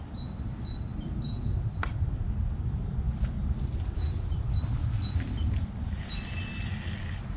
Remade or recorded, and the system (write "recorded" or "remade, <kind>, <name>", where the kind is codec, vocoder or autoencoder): recorded